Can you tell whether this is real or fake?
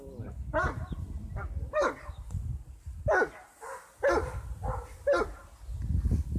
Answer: real